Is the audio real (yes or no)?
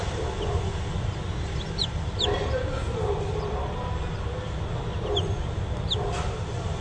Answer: yes